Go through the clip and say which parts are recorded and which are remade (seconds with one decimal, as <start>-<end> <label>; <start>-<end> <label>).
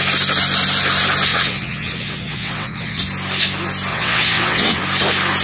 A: 0.0-1.3 recorded; 1.3-3.0 remade; 3.0-3.9 recorded; 3.9-4.8 remade; 4.8-5.4 recorded